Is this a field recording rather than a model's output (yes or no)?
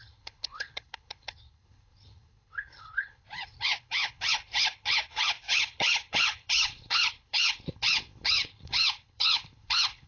no